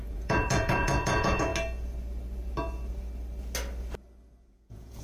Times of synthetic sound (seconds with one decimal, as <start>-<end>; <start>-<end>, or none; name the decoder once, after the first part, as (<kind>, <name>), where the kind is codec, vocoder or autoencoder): 0.0-1.5 (vocoder, Vocos); 4.5-5.0